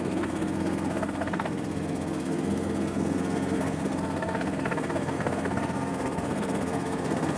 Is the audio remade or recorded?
remade